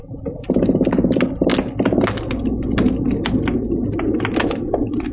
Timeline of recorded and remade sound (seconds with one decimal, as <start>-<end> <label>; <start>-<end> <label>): 0.0-5.1 recorded